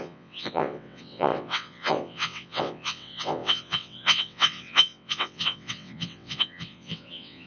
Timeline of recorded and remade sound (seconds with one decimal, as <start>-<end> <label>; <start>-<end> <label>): 0.0-7.5 remade